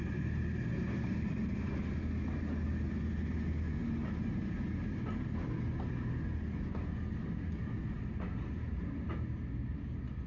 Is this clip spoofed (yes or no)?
no